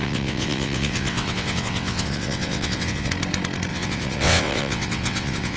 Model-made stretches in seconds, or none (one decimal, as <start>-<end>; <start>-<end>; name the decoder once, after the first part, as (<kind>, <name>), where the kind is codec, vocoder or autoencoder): 0.0-3.1 (vocoder, WaveNeXt); 3.7-5.6

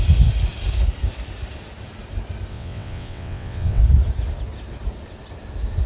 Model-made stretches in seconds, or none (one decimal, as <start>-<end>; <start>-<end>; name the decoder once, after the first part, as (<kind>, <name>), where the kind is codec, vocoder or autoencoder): 2.5-3.8 (vocoder, WaveNeXt)

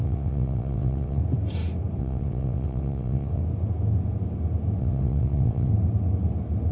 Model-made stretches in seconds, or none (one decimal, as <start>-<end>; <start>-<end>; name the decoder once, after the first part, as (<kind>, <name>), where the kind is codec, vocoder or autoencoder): 0.0-1.2 (vocoder, WaveNeXt); 2.0-3.4; 4.8-5.7

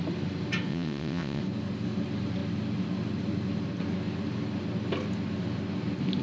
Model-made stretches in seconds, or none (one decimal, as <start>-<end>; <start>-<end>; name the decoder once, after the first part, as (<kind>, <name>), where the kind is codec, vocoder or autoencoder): 0.7-1.4 (vocoder, WaveNeXt)

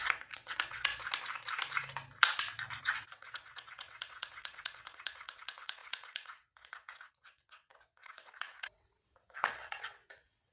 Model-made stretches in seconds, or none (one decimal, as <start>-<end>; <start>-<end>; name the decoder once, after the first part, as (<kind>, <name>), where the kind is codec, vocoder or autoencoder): 0.0-0.9 (vocoder, WaveNeXt); 2.8-10.5